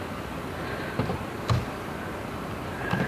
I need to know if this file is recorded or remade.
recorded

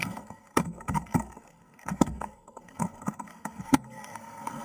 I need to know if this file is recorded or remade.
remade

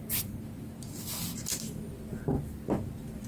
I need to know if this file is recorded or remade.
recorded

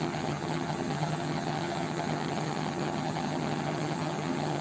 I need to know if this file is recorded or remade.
remade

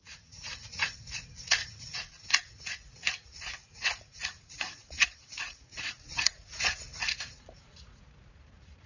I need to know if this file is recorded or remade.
remade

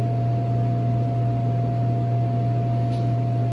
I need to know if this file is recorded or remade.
recorded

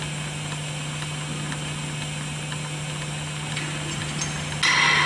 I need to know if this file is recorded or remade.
recorded